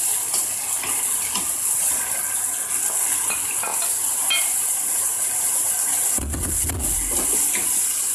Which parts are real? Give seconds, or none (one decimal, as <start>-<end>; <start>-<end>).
0.0-3.7; 6.2-8.1